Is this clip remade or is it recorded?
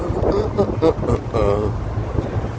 recorded